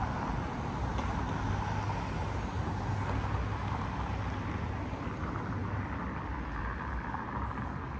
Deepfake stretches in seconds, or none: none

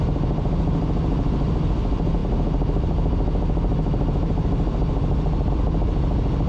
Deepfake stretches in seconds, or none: none

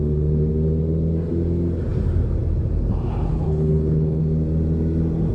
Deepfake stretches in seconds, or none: 3.3-4.2

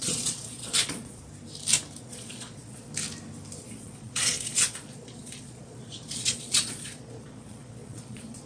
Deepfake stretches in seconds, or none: 0.0-1.2; 2.0-2.9; 3.6-8.5

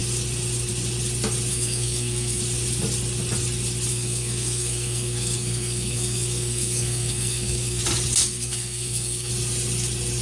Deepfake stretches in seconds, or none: 1.5-2.4; 3.9-7.8; 8.2-9.3

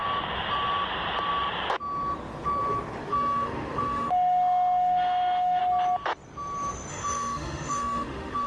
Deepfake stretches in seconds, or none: 3.1-5.6; 6.9-8.5